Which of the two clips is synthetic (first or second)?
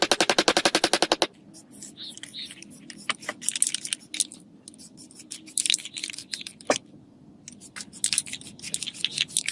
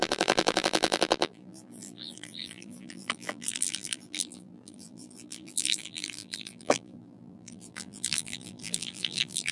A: second